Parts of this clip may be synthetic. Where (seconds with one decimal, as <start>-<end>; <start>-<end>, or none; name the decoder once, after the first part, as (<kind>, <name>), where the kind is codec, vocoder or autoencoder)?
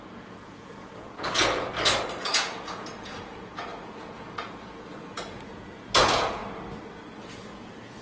0.0-1.7 (vocoder, Vocos); 2.2-6.4; 7.2-8.0